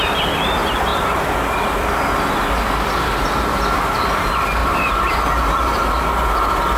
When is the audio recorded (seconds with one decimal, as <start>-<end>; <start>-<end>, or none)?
0.0-4.6; 5.1-6.8

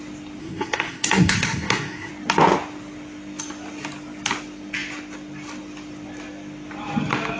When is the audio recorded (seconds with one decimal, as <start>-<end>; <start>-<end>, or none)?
0.0-0.4; 2.1-7.4

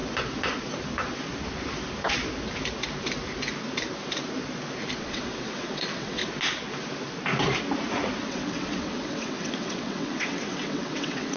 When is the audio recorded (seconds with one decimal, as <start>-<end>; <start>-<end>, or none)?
0.0-5.0; 6.2-8.2

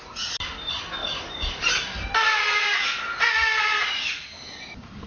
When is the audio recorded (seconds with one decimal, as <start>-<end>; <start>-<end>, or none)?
0.0-5.1

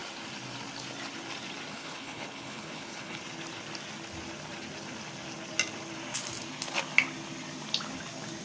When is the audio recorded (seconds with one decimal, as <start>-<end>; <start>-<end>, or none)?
0.0-1.7; 3.2-8.4

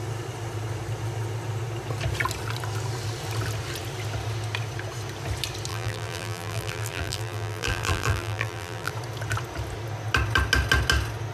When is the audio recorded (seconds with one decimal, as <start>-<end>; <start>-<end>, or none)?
0.0-5.7; 8.9-11.3

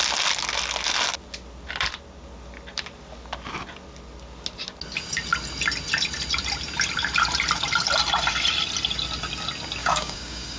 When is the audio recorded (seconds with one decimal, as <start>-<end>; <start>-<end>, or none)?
0.0-9.8